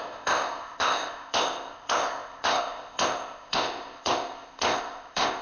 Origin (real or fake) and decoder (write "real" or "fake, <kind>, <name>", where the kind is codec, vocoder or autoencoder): fake, codec, ZipCodec